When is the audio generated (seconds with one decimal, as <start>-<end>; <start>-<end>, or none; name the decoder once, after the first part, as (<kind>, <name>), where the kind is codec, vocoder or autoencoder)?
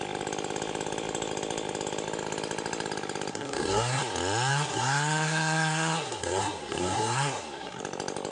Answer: 3.3-4.0 (codec, SNAC); 4.5-7.8